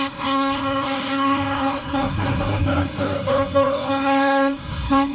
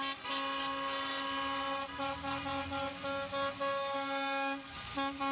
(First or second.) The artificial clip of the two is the first